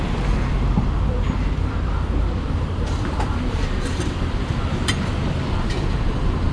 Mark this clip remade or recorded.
remade